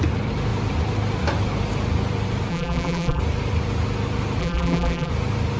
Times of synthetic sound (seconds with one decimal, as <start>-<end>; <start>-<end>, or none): 2.5-3.2; 4.4-5.1